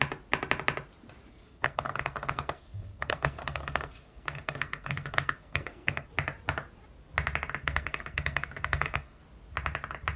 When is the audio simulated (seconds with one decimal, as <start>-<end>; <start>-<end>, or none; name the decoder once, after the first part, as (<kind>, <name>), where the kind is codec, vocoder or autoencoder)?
1.3-6.1 (codec, SNAC); 7.6-9.2